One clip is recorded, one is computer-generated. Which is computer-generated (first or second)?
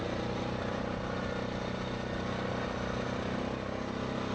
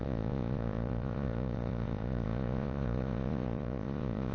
second